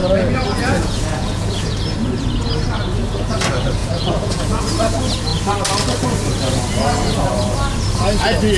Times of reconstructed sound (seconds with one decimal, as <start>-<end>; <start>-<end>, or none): 0.0-1.8; 3.8-4.6